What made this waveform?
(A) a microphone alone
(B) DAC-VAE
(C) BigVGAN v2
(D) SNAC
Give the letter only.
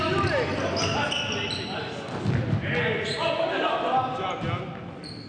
A